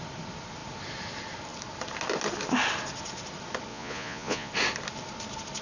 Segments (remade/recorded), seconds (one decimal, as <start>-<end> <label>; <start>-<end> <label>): 0.0-3.7 recorded; 3.7-4.5 remade; 4.5-5.6 recorded